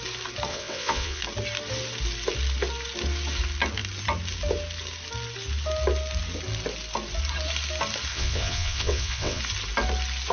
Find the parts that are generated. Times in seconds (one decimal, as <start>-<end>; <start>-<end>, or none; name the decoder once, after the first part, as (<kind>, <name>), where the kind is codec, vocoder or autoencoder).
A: 0.5-1.2 (vocoder, WaveNeXt); 8.1-9.4